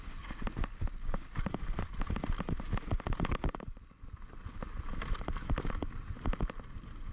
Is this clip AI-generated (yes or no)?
no